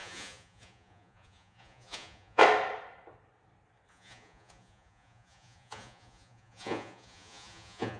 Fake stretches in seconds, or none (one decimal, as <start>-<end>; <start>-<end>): 0.0-2.4; 3.9-8.0